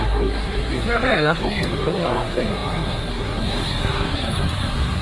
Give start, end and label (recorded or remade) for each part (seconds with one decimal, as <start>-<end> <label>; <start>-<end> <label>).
0.0-5.0 remade